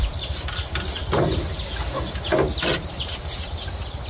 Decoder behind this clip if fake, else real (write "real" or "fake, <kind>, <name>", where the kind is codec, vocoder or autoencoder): real